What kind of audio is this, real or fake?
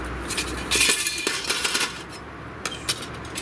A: real